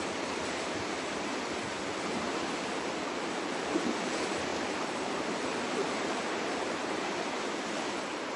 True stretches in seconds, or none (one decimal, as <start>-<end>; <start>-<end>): 1.3-2.0